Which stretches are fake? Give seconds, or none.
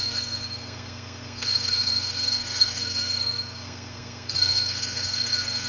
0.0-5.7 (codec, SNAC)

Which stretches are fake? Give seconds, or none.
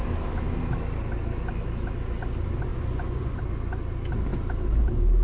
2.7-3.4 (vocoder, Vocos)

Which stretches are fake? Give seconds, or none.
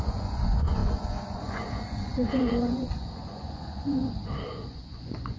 0.0-5.4 (vocoder, Vocos)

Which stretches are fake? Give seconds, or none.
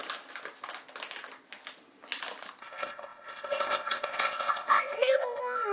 2.6-5.7 (codec, ZipCodec)